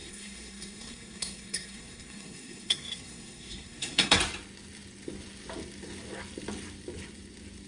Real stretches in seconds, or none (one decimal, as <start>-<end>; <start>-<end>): 4.2-7.7